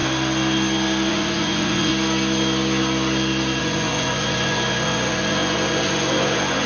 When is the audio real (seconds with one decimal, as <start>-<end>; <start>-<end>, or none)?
0.0-1.1; 1.9-3.6